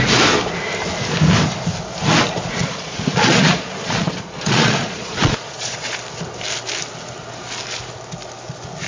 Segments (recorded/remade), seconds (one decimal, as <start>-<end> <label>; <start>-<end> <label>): 0.0-2.6 recorded; 2.6-5.9 remade; 5.9-8.9 recorded